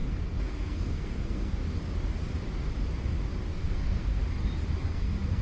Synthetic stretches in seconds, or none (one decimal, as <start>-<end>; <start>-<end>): 0.0-1.6; 3.5-4.2; 4.8-5.4